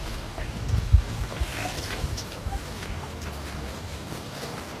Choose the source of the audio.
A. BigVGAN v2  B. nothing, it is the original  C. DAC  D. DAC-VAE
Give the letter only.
C